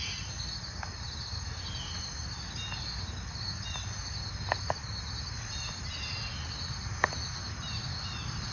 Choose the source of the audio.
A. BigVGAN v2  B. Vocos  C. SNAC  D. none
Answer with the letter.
D